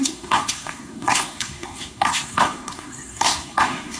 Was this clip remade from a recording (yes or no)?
yes